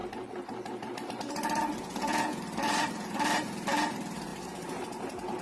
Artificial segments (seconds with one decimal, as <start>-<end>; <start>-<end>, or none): 1.8-2.4